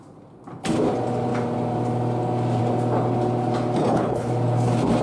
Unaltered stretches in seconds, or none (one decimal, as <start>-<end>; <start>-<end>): 0.0-3.8; 4.3-5.0